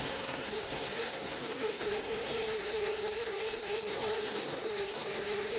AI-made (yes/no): yes